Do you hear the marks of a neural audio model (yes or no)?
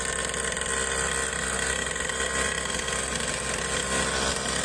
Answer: no